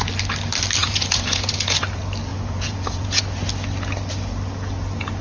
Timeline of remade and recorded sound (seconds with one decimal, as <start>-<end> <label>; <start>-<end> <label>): 0.0-0.8 recorded; 0.8-1.8 remade; 1.8-2.3 recorded; 2.3-3.2 remade; 3.2-5.2 recorded